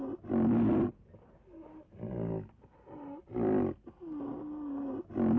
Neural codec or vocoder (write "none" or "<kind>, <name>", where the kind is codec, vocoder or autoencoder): none